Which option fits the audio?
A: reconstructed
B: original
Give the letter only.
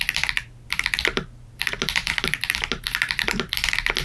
B